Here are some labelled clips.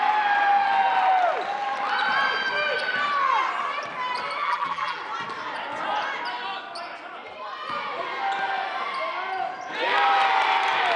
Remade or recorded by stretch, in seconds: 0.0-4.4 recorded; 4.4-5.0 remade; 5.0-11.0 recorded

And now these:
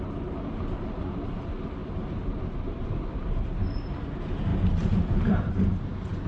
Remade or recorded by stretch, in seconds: 0.0-6.3 recorded

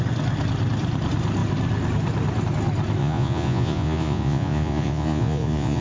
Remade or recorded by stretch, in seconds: 0.0-3.0 recorded; 3.0-5.8 remade

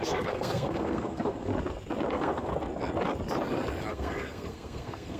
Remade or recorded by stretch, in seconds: 0.0-1.5 remade; 1.5-2.1 recorded; 2.1-2.5 remade; 2.5-3.9 recorded; 3.9-5.2 remade

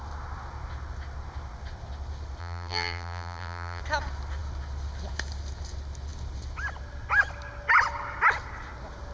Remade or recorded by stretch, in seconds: 0.0-2.4 recorded; 2.4-3.8 remade; 3.8-9.1 recorded

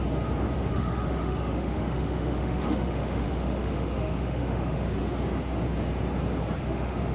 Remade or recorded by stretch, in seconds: 0.0-0.7 recorded; 0.7-5.0 remade; 5.0-6.6 recorded; 6.6-7.1 remade

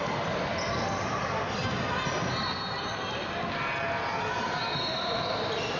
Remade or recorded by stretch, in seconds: 0.0-5.8 recorded

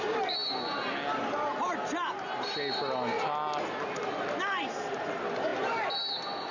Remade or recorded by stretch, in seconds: 0.0-6.5 recorded